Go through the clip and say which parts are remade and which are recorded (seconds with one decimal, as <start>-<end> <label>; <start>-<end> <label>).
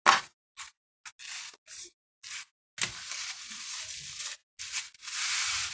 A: 0.0-5.7 recorded